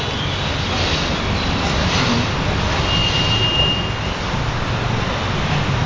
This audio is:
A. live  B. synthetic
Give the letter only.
A